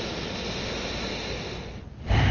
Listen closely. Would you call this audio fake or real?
real